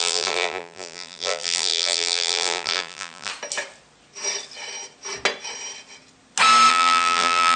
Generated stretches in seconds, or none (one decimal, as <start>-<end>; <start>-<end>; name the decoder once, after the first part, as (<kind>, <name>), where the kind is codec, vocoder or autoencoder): 0.0-3.3 (vocoder, BigVGAN v2); 6.7-7.6